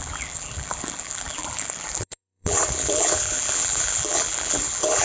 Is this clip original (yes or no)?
no